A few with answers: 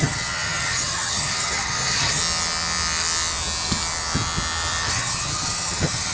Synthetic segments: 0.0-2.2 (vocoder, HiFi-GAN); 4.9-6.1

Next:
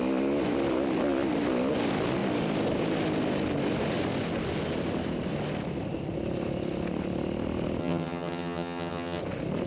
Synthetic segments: 7.8-9.2 (vocoder, HiFi-GAN)

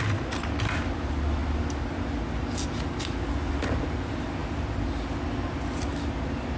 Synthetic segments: none